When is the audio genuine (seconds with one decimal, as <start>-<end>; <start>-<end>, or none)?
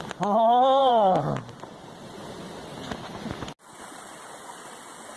0.0-0.8; 2.1-5.2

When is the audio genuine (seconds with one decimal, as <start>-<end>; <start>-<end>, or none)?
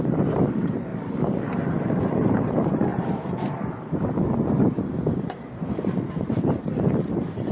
0.9-1.7